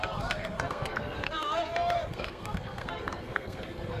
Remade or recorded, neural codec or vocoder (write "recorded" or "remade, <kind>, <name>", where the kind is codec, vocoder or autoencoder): remade, codec, SNAC